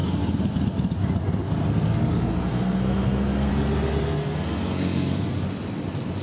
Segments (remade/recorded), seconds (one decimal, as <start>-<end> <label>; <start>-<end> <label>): 0.0-2.3 recorded; 2.3-3.5 remade; 3.5-4.2 recorded; 4.2-5.3 remade; 5.3-6.2 recorded